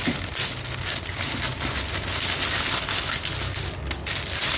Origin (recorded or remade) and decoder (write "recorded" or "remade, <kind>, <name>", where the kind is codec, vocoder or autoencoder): recorded